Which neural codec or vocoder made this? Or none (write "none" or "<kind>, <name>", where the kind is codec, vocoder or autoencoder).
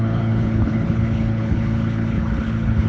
codec, HILCodec